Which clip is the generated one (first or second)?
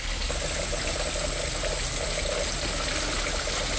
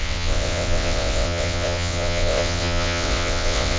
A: second